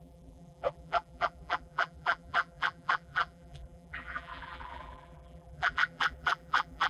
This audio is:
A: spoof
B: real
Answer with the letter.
A